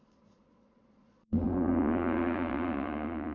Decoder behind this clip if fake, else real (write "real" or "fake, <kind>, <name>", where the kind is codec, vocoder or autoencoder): fake, vocoder, Vocos